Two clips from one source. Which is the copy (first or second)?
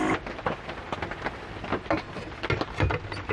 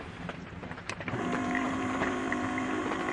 second